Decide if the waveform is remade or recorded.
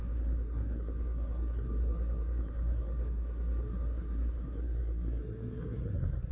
remade